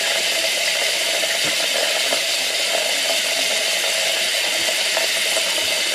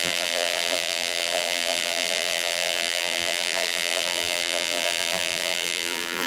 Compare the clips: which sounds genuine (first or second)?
first